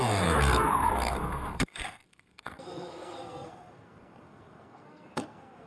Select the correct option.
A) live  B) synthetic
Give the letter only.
B